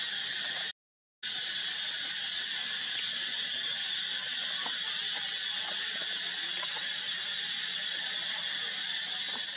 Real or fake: real